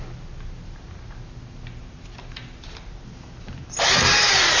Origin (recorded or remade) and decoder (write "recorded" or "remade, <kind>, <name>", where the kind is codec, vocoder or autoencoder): recorded